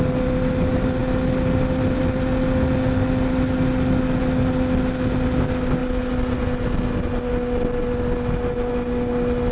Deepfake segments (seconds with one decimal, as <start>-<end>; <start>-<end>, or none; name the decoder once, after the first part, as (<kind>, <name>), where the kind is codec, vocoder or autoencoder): none